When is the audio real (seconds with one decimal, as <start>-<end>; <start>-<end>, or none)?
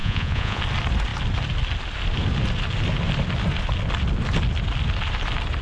0.6-5.6